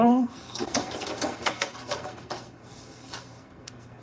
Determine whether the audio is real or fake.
fake